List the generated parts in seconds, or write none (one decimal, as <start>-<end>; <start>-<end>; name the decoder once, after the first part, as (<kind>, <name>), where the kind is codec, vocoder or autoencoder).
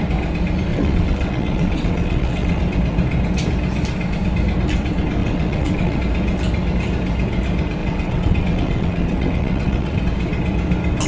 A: 0.7-2.6 (vocoder, WaveNeXt); 5.2-6.0; 7.8-10.0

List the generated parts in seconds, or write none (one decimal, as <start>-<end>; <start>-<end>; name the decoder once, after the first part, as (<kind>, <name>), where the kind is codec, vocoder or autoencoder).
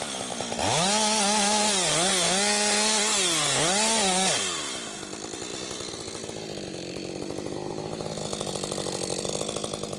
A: none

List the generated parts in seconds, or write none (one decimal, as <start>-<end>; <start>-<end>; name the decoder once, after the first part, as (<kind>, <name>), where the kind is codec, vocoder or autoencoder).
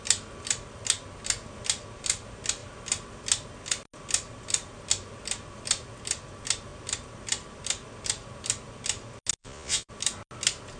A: 9.4-9.9 (vocoder, Vocos)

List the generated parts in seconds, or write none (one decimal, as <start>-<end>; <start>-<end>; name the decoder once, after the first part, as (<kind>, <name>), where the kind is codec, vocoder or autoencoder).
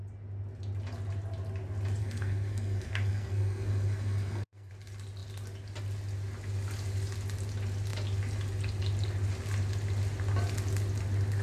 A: 2.0-4.7 (codec, SNAC)